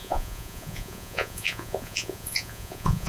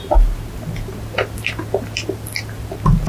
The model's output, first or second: first